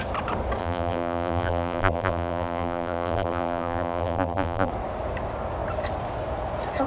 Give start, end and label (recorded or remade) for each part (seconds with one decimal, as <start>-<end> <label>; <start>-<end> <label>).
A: 0.0-0.6 recorded; 0.6-4.7 remade; 4.7-6.9 recorded